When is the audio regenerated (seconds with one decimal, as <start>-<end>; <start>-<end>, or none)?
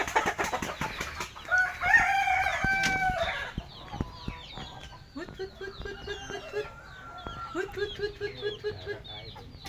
none